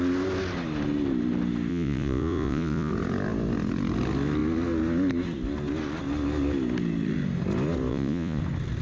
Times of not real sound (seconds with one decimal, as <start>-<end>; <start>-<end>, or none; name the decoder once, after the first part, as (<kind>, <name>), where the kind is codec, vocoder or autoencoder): 1.7-2.9 (vocoder, Vocos); 7.9-8.4